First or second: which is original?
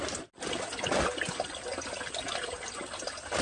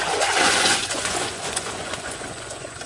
first